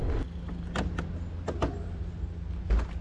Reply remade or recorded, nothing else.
recorded